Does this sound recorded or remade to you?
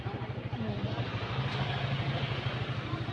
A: recorded